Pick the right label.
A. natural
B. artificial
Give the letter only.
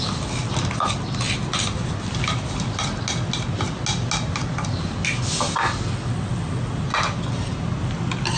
A